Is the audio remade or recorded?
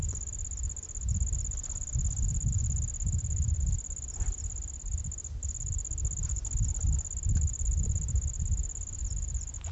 recorded